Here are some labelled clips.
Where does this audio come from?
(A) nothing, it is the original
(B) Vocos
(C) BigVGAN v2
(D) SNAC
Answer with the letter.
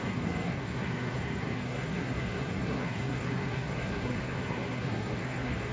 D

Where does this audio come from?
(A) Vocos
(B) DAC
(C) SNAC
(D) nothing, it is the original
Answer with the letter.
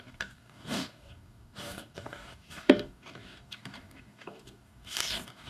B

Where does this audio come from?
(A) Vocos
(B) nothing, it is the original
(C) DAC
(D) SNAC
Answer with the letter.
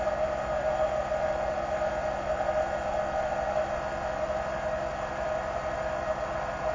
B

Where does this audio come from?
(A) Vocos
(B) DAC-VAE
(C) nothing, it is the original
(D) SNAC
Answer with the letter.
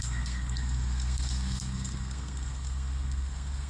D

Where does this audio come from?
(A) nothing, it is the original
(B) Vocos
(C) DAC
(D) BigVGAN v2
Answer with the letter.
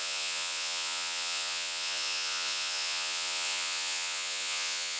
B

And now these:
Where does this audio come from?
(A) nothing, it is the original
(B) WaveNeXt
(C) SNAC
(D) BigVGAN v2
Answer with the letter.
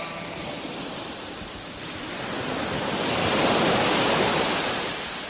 D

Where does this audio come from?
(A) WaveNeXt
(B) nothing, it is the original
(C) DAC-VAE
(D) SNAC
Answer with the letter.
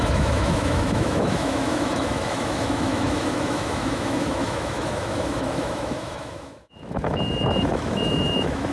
C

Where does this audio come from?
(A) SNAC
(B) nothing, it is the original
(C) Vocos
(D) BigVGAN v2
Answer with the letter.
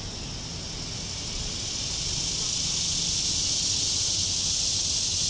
B